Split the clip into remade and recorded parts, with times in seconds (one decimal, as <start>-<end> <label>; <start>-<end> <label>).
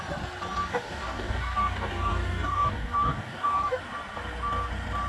0.0-0.7 recorded; 0.7-3.8 remade; 3.8-5.1 recorded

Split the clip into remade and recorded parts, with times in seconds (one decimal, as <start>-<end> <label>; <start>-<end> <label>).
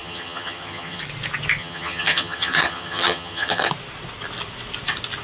0.0-1.0 remade; 1.0-1.6 recorded; 1.6-3.7 remade; 3.7-5.2 recorded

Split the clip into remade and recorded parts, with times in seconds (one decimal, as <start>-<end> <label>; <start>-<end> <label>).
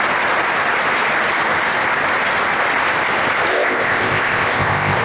0.0-3.5 recorded; 3.5-5.0 remade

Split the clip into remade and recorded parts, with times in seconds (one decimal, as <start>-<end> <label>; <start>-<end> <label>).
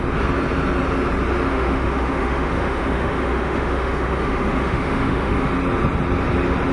0.0-1.5 recorded; 1.5-5.5 remade; 5.5-6.7 recorded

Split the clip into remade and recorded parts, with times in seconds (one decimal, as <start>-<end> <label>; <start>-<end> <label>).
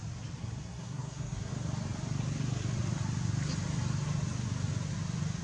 0.0-0.4 recorded; 0.4-1.5 remade; 1.5-5.4 recorded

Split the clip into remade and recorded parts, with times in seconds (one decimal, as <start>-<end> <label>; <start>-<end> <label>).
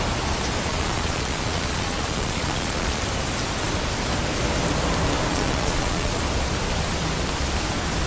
0.0-0.7 recorded; 0.7-3.0 remade; 3.0-5.3 recorded; 5.3-6.2 remade; 6.2-8.1 recorded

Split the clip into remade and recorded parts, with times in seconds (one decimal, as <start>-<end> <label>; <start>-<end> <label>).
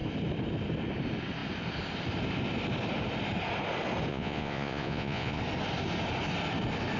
0.0-4.1 recorded; 4.1-5.4 remade; 5.4-7.0 recorded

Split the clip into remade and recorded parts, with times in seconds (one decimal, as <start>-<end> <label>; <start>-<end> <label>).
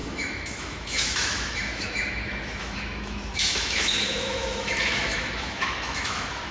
0.0-6.5 remade